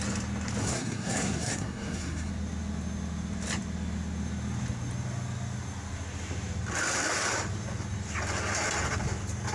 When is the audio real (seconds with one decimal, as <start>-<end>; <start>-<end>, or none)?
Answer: 0.0-0.6; 2.3-9.5